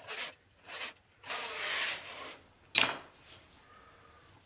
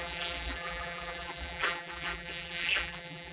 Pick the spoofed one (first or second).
second